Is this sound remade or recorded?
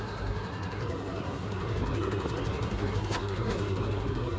remade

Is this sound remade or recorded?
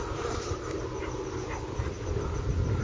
recorded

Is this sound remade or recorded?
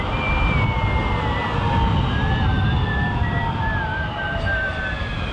recorded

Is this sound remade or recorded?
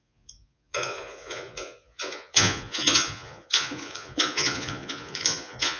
remade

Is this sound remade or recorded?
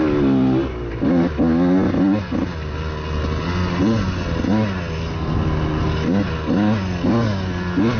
recorded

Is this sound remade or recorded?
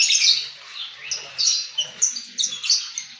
recorded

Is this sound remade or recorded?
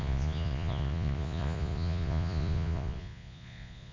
remade